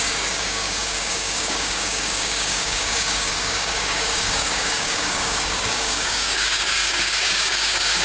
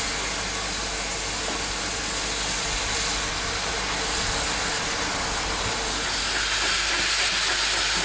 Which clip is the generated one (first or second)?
first